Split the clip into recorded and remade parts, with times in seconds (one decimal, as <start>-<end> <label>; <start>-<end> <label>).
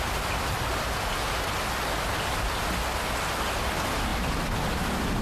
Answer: 0.0-5.2 recorded